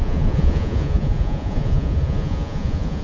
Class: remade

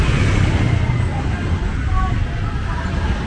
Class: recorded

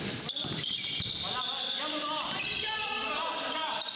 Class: recorded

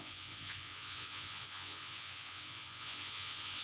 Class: remade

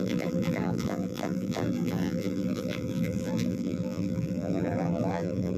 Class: remade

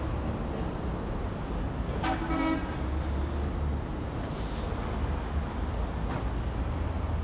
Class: recorded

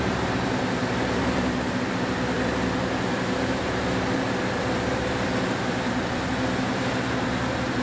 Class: remade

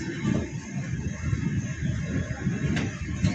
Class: recorded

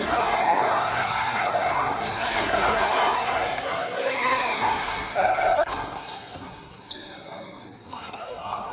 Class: remade